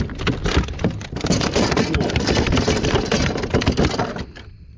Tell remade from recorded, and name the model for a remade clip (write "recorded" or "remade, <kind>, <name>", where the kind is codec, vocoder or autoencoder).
recorded